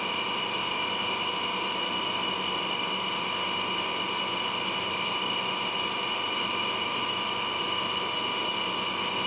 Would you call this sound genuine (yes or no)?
yes